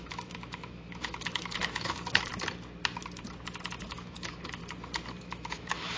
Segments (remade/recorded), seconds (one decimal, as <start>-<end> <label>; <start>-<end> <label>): 0.0-2.3 remade; 2.3-3.8 recorded; 3.8-4.6 remade; 4.6-5.2 recorded; 5.2-6.0 remade